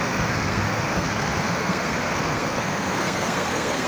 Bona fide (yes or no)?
no